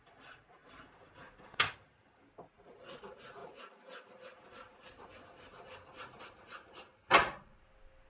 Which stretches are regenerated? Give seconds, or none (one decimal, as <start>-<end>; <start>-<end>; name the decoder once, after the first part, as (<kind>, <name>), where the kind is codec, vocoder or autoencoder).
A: none